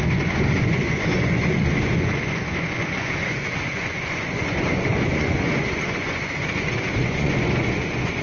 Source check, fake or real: fake